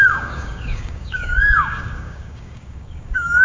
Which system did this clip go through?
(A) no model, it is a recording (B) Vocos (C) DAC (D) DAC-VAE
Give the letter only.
C